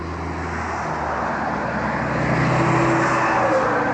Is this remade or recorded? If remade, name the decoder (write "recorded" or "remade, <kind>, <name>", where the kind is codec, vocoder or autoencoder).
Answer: recorded